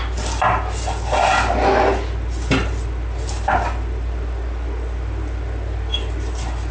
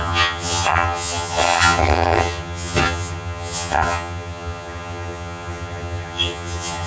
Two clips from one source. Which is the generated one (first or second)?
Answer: second